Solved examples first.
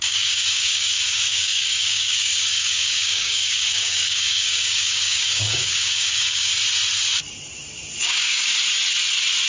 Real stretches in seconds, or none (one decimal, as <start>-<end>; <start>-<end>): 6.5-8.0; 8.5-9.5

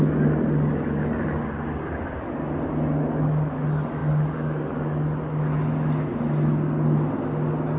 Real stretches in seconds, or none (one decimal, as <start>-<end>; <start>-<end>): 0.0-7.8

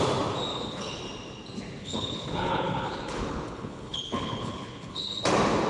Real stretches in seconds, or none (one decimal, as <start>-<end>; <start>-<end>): 0.0-0.5; 1.0-1.8; 5.2-5.7